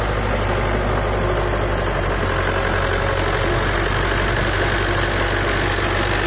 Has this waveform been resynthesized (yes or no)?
no